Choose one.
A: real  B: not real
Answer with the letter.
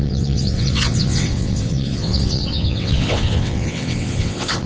B